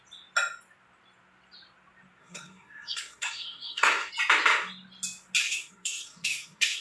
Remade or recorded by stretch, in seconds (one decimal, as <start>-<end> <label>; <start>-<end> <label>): 0.0-2.2 recorded; 2.2-4.1 remade; 4.1-5.4 recorded; 5.4-6.8 remade